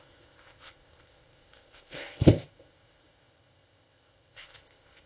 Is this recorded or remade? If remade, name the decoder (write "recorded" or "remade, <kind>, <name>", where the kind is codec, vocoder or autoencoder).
remade, codec, ZipCodec